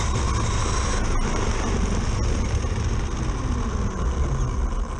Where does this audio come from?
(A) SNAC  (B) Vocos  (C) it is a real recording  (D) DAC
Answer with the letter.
C